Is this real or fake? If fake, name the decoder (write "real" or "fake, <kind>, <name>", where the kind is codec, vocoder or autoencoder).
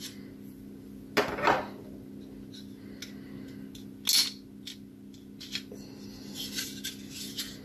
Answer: real